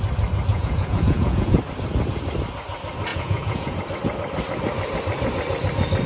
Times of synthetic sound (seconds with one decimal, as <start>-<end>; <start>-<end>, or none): 0.5-1.6; 3.1-3.8